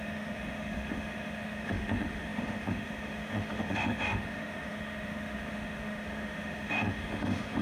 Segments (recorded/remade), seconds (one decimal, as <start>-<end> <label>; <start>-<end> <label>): 0.0-7.6 remade